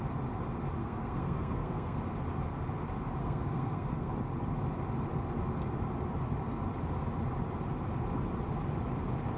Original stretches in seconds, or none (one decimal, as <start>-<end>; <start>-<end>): 0.0-0.8; 2.0-3.2; 4.1-9.4